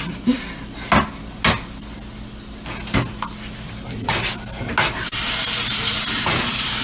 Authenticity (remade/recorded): recorded